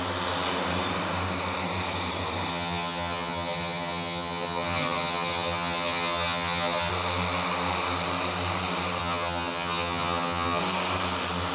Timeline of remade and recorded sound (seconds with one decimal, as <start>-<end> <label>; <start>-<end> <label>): 0.0-2.5 recorded; 2.5-6.9 remade; 6.9-9.0 recorded; 9.0-10.6 remade; 10.6-11.5 recorded